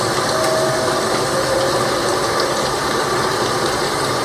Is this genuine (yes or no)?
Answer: yes